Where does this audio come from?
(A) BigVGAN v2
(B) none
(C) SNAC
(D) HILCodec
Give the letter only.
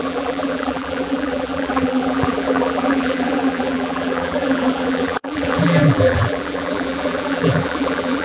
A